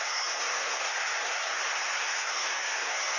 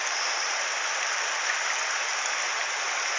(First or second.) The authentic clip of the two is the second